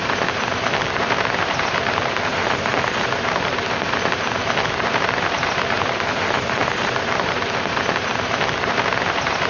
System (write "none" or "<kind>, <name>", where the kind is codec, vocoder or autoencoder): vocoder, BigVGAN v2